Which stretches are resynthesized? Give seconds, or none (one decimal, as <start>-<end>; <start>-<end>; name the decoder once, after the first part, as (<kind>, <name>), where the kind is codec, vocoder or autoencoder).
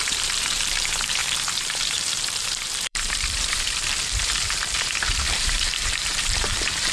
0.0-6.9 (vocoder, BigVGAN v2)